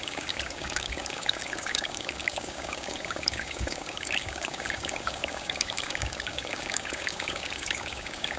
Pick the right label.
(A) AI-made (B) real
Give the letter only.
A